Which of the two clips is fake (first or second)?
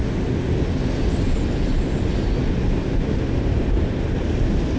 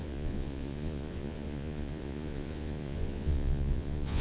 second